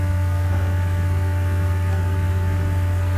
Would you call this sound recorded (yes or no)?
no